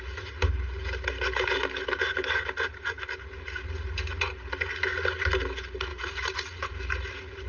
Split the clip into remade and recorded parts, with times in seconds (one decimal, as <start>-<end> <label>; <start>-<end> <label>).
0.0-5.9 recorded; 5.9-6.7 remade; 6.7-7.5 recorded